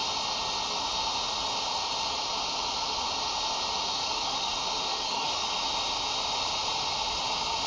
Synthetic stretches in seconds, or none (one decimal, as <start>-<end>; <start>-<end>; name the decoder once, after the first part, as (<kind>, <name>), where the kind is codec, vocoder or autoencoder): 3.9-4.5 (codec, DAC); 4.9-5.5